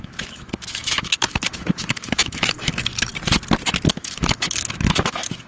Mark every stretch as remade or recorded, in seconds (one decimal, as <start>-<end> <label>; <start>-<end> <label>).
0.0-3.1 remade; 3.1-3.9 recorded; 3.9-5.5 remade